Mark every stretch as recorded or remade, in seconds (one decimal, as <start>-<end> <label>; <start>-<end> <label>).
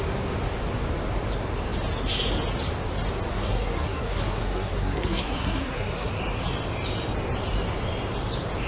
0.0-3.3 recorded; 3.3-6.1 remade; 6.1-8.7 recorded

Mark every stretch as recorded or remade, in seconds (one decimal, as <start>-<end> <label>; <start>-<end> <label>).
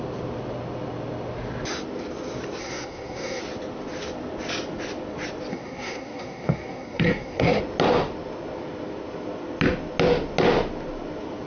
0.0-2.6 recorded; 2.6-3.4 remade; 3.4-5.5 recorded; 5.5-7.6 remade; 7.6-11.5 recorded